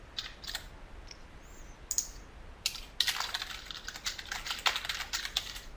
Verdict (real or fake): real